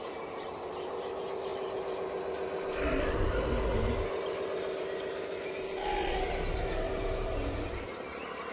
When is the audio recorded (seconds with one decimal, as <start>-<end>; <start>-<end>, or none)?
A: 0.0-8.5